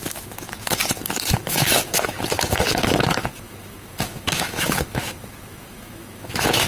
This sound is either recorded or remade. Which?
remade